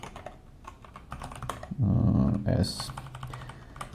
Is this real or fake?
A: real